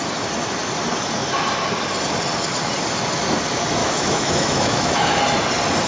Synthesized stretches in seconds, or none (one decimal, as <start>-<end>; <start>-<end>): 3.8-5.2